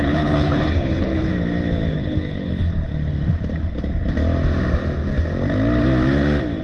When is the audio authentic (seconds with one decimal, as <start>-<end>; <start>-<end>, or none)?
1.3-1.9; 2.9-6.6